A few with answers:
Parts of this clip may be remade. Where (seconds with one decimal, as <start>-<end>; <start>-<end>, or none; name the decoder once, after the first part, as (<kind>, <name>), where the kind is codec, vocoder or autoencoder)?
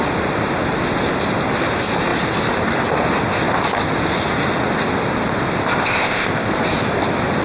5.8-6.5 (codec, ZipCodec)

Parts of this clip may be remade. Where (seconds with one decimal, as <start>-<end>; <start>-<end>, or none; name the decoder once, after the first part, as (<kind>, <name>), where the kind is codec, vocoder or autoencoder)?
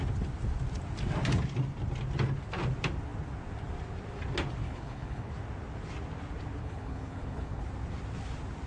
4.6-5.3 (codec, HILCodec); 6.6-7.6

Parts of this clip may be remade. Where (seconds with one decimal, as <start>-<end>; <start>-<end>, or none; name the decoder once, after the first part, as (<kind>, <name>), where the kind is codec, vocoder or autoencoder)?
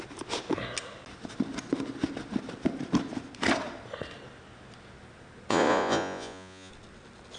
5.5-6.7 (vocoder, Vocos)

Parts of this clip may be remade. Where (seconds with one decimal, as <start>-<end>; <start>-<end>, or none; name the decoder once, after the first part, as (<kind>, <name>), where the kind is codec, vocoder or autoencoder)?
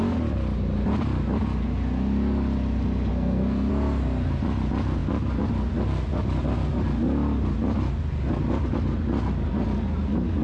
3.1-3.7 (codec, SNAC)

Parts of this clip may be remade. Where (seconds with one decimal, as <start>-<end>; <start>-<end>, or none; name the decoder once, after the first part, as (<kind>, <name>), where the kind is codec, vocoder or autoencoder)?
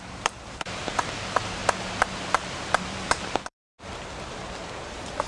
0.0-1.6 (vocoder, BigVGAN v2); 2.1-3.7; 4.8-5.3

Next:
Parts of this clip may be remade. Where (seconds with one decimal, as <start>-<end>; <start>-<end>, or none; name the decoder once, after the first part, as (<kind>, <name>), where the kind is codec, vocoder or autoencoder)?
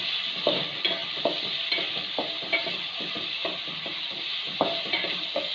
none